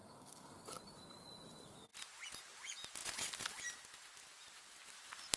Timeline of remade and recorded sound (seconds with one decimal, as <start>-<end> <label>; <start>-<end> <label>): 0.0-0.6 remade; 0.6-5.4 recorded